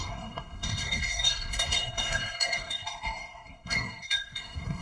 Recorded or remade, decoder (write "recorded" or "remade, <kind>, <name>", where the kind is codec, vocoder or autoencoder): remade, codec, SNAC